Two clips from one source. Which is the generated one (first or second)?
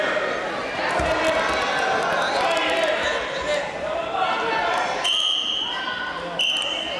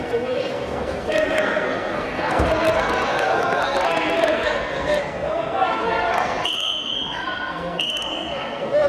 second